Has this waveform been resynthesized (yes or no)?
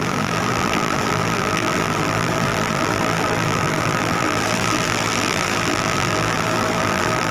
yes